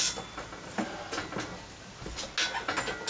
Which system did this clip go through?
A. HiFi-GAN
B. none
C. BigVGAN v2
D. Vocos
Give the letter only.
B